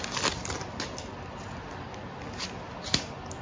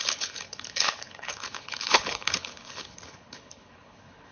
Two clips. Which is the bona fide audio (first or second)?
first